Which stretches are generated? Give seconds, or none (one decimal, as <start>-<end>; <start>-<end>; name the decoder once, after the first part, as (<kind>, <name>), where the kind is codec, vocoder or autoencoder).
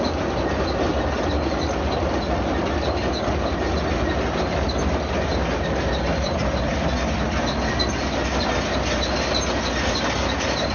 none